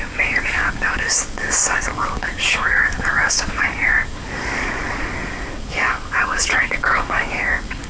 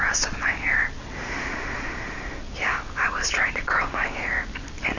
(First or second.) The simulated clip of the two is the first